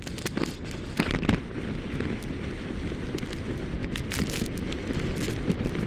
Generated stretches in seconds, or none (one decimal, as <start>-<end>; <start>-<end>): none